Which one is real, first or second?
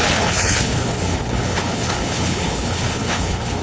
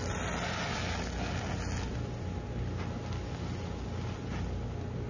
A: second